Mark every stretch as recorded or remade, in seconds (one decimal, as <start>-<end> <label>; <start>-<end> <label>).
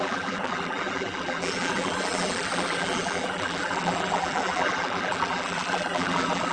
0.0-6.5 remade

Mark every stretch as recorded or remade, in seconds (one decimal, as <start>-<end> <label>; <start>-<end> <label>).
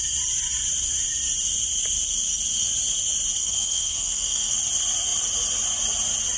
0.0-3.4 recorded; 3.4-4.5 remade; 4.5-6.4 recorded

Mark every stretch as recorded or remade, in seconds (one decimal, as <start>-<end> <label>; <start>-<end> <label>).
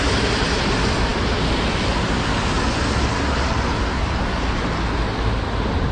0.0-5.9 recorded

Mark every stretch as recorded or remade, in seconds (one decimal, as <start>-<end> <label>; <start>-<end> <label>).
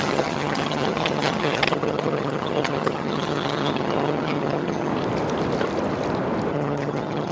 0.0-4.9 remade; 4.9-6.5 recorded; 6.5-7.3 remade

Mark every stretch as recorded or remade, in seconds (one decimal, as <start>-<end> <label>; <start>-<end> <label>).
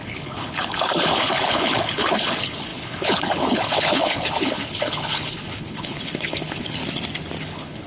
0.0-6.8 remade; 6.8-7.4 recorded; 7.4-7.9 remade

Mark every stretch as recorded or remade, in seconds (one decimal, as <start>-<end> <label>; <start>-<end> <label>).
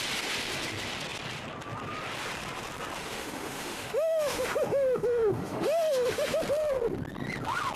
0.0-3.0 recorded; 3.0-6.4 remade; 6.4-7.8 recorded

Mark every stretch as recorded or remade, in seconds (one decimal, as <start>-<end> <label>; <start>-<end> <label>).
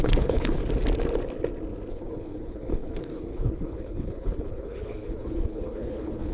0.0-0.6 remade; 0.6-1.9 recorded; 1.9-6.3 remade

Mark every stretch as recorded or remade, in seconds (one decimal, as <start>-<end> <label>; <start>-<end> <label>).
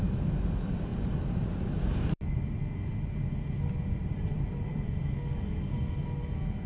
0.0-0.9 recorded; 0.9-2.5 remade; 2.5-4.0 recorded; 4.0-5.0 remade; 5.0-6.7 recorded